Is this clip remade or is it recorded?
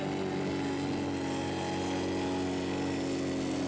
recorded